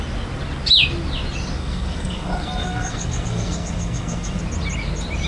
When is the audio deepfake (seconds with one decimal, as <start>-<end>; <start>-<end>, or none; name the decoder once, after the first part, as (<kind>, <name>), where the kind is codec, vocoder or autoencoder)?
1.6-4.4 (codec, SNAC)